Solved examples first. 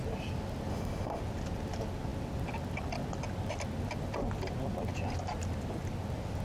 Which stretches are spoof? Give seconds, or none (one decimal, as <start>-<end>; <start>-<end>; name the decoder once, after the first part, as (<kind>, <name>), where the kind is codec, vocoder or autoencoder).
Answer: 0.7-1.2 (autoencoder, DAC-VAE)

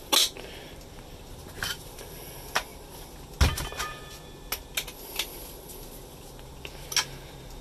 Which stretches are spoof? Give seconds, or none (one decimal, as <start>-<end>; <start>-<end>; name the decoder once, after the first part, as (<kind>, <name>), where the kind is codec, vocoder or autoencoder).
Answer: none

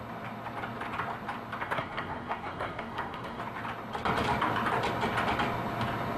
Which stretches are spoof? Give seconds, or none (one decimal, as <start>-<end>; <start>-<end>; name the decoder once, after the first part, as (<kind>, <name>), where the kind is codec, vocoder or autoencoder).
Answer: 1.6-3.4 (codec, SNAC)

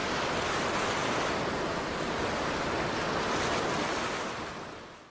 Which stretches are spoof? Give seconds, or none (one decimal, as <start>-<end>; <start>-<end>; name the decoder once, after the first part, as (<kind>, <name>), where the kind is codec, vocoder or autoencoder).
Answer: none

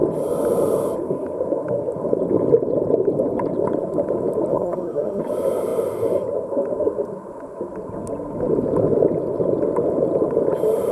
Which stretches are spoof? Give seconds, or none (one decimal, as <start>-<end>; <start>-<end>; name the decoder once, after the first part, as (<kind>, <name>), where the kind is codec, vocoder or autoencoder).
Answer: 4.5-5.2 (codec, SNAC)